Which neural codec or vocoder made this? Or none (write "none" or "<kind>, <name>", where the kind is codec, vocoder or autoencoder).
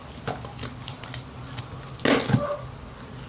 none